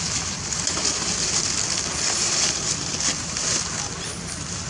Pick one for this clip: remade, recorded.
recorded